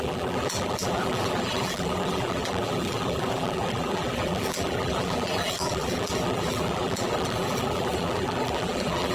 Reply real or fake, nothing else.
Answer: fake